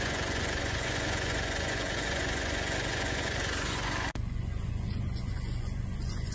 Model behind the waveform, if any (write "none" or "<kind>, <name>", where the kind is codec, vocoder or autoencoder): vocoder, Vocos